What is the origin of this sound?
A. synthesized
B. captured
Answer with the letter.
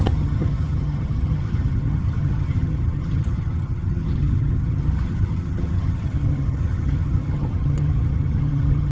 A